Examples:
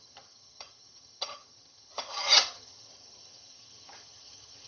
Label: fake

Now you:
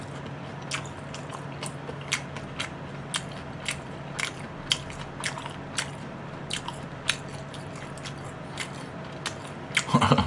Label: real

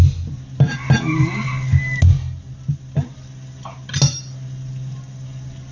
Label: real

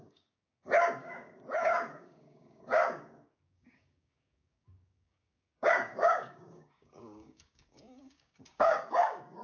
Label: fake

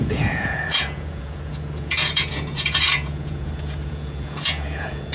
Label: fake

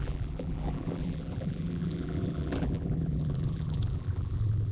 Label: fake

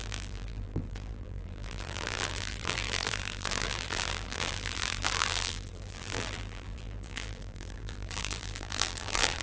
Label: fake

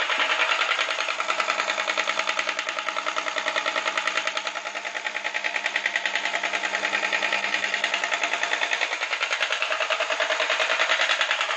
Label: real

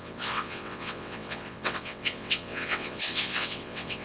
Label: fake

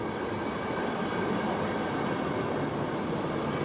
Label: real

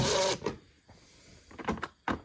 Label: real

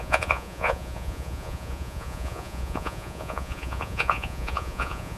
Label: fake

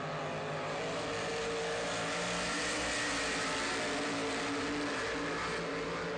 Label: real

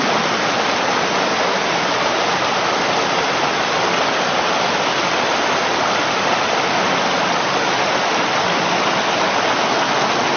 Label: real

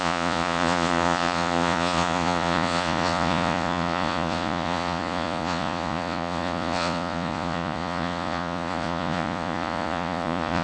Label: fake